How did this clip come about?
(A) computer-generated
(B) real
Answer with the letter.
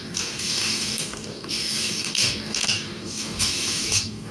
A